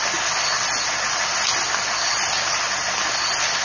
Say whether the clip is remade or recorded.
recorded